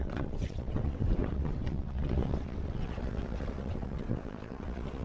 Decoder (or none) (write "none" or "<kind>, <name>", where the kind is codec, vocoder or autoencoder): vocoder, WaveNeXt